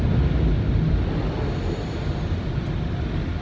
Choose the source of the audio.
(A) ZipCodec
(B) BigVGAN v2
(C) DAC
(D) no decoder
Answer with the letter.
D